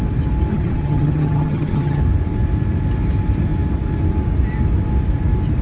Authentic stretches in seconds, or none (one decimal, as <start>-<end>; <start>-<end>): 0.0-0.5; 2.0-5.6